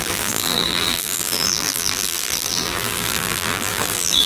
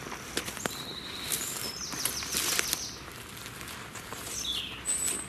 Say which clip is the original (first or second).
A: second